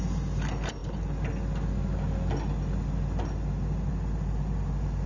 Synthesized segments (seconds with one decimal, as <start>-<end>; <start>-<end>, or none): none